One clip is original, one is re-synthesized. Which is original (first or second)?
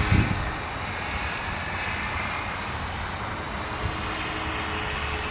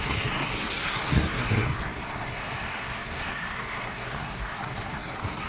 first